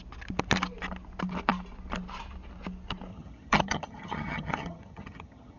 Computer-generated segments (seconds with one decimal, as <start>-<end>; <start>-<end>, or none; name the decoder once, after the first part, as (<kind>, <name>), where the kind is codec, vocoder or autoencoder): 3.1-5.6 (vocoder, HiFi-GAN)